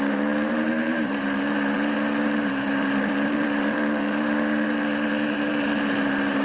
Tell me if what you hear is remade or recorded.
remade